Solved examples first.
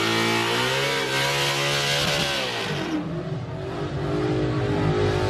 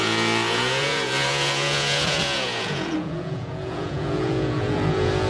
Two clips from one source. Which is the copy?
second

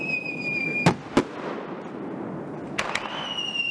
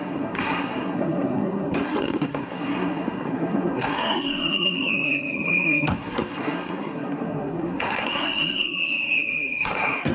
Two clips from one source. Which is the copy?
second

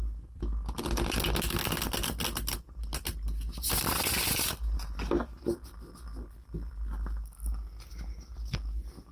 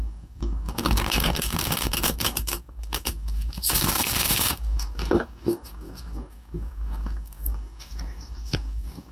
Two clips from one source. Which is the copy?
second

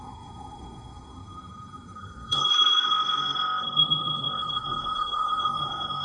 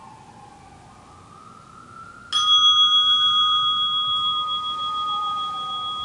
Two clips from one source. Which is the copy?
first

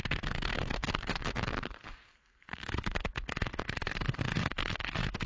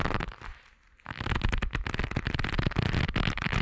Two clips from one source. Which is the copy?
first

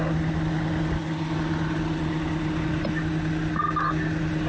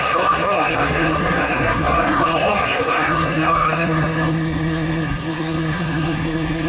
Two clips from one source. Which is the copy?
second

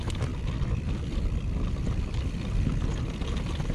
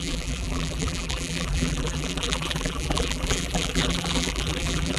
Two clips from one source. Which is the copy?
second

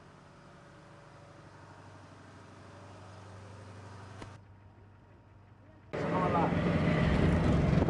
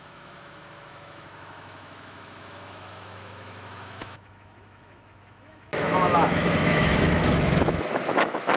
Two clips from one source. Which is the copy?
second